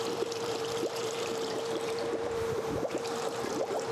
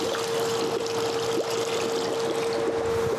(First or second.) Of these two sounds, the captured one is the second